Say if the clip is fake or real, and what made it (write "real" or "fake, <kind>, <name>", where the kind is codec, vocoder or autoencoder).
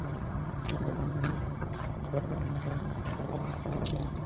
fake, vocoder, HiFi-GAN